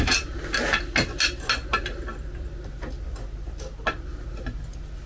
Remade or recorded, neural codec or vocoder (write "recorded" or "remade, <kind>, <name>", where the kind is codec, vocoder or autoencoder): recorded